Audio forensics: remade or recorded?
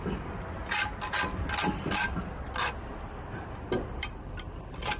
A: recorded